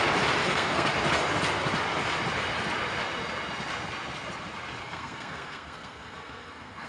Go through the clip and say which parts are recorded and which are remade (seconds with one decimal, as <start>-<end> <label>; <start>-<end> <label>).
0.0-0.4 recorded; 0.4-0.9 remade; 0.9-4.8 recorded; 4.8-6.9 remade